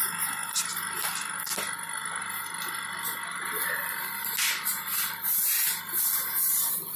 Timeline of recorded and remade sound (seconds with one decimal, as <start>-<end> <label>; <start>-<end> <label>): 0.0-7.0 recorded